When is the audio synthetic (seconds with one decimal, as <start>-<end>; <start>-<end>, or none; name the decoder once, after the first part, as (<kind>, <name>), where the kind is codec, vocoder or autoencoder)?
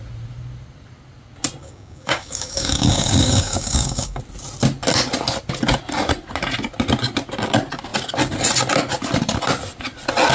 1.6-4.2 (codec, DAC)